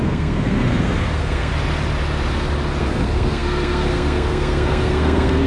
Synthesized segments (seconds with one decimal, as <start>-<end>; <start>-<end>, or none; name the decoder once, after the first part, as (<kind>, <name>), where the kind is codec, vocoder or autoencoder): 0.0-1.5 (codec, SNAC); 2.8-5.5